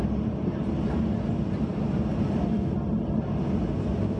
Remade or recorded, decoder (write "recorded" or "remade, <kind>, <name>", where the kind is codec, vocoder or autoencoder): recorded